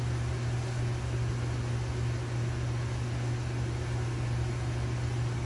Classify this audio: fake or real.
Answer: real